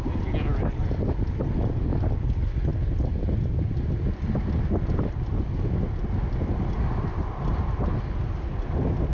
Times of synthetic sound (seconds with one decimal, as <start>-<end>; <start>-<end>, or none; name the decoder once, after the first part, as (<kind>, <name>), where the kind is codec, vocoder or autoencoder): none